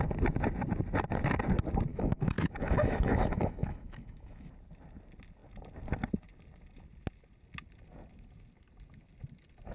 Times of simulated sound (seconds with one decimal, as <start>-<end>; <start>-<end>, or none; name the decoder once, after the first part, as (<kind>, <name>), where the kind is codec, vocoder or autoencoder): 1.9-4.5 (autoencoder, DAC-VAE)